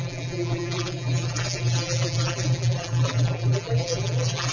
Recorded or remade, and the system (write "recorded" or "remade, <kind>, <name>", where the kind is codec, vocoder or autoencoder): remade, vocoder, BigVGAN v2